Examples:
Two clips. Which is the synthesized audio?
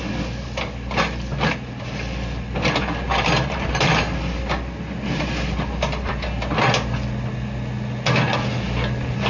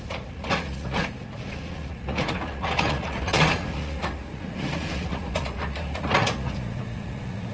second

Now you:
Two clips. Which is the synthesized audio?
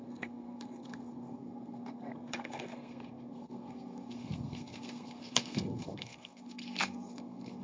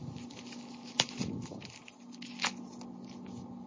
first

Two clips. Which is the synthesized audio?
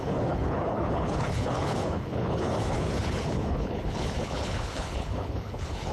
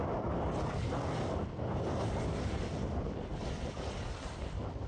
first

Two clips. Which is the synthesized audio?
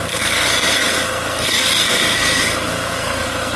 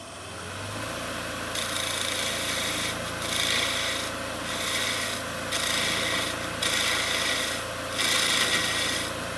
first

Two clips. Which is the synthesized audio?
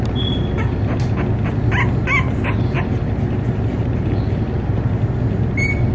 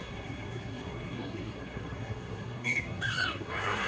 second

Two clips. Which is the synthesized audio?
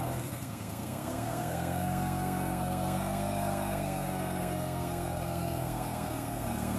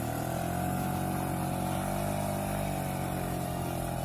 first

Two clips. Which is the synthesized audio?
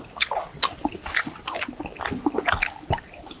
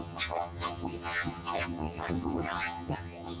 second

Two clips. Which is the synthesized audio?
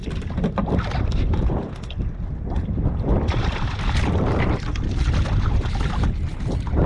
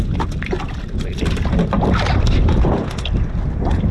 first